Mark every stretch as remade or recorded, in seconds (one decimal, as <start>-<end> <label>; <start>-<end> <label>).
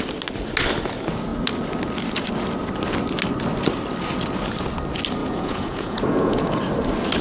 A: 0.0-5.2 recorded; 5.2-6.6 remade; 6.6-7.2 recorded